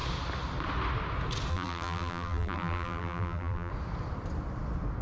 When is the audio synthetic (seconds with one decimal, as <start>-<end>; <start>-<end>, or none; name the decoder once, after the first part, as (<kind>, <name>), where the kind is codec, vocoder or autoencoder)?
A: 1.5-3.7 (vocoder, BigVGAN v2)